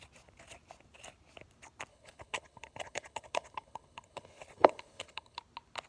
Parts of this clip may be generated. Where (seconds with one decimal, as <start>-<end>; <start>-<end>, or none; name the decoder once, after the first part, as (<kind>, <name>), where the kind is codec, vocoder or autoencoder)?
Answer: 1.9-5.4 (codec, HILCodec)